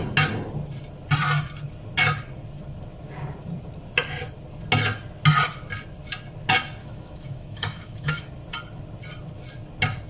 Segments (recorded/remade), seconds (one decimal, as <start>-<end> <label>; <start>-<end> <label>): 0.0-6.8 recorded; 6.8-8.2 remade; 8.2-10.1 recorded